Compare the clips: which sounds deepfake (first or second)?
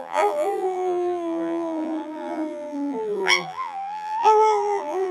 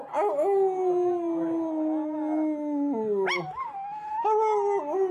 first